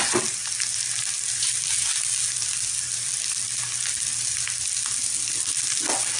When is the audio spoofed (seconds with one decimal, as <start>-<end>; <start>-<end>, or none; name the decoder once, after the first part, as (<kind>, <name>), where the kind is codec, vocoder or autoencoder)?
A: none